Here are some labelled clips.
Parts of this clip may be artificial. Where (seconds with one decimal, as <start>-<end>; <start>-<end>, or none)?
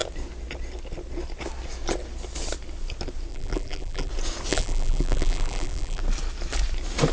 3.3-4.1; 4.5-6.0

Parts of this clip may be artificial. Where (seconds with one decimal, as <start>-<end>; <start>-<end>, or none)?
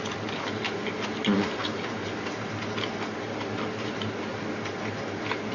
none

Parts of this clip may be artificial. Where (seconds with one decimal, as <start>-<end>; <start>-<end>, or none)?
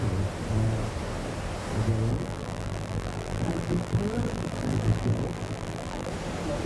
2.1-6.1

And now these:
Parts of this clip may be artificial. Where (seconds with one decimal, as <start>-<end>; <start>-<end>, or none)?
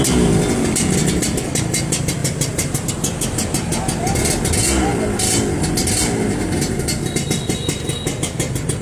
2.2-2.9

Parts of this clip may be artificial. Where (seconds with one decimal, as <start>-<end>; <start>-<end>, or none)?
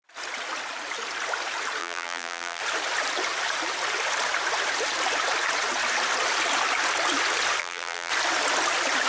1.8-2.6; 7.6-8.1